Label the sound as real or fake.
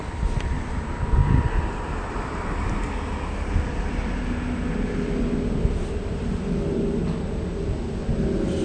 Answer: real